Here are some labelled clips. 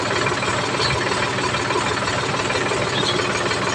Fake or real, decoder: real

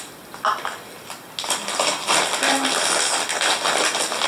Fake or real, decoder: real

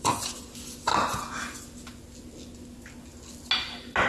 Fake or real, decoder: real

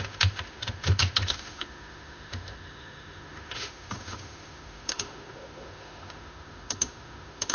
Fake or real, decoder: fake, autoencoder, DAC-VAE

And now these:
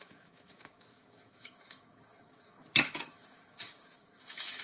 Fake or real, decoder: fake, autoencoder, DAC-VAE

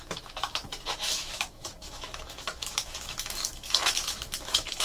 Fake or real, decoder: fake, autoencoder, DAC-VAE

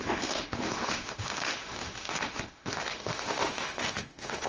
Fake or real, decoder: fake, autoencoder, DAC-VAE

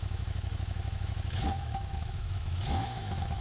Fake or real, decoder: fake, autoencoder, DAC-VAE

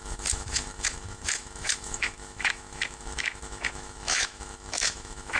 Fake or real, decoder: fake, autoencoder, DAC-VAE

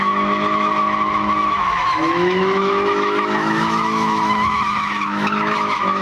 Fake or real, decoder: fake, autoencoder, DAC-VAE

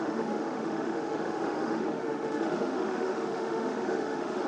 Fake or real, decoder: fake, autoencoder, DAC-VAE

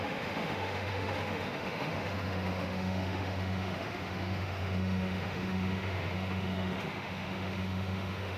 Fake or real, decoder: fake, autoencoder, DAC-VAE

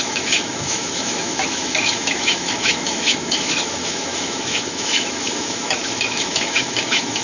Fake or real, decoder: fake, autoencoder, DAC-VAE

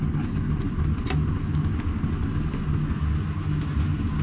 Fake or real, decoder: real